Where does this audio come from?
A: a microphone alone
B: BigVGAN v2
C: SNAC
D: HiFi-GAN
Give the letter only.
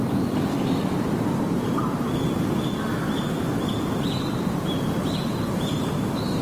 B